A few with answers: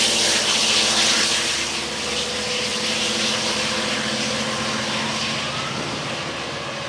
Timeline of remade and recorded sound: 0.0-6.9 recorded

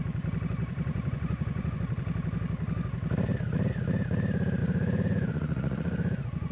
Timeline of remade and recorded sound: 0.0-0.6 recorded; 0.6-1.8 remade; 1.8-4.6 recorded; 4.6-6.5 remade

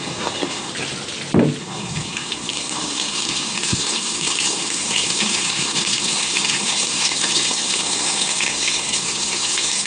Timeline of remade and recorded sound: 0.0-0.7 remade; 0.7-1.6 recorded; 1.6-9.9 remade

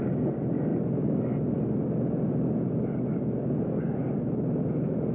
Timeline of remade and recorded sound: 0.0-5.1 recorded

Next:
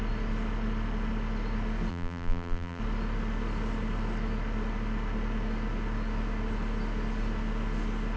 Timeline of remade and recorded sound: 0.0-1.9 recorded; 1.9-2.8 remade; 2.8-8.2 recorded

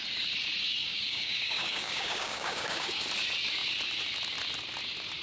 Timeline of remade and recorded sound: 0.0-0.9 recorded; 0.9-3.0 remade; 3.0-5.2 recorded